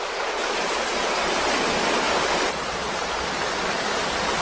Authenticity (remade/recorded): recorded